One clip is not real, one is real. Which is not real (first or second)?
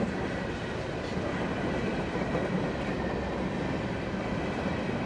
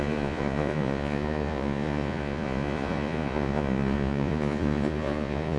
second